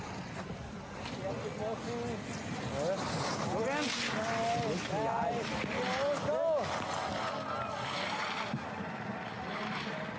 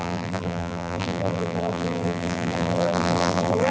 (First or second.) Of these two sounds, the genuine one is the first